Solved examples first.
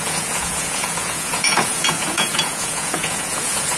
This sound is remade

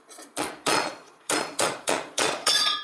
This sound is remade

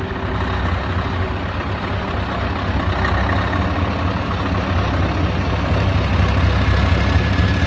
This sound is recorded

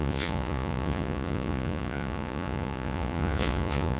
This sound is remade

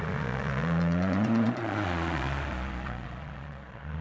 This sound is remade